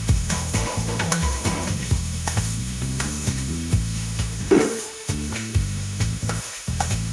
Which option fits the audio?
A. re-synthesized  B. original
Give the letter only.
A